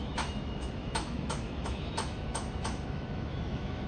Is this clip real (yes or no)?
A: no